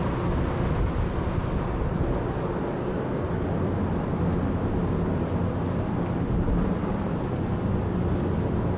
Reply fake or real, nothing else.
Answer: real